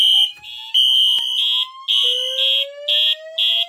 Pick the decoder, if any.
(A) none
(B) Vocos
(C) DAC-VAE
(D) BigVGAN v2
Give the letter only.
A